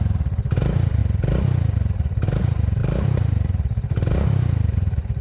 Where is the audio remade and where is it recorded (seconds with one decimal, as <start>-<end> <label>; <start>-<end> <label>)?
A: 0.0-1.0 remade; 1.0-2.4 recorded; 2.4-5.2 remade